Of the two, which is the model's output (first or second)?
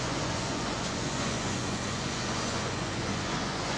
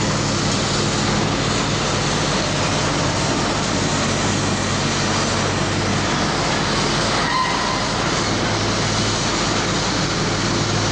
first